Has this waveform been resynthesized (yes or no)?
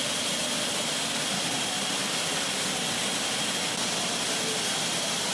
no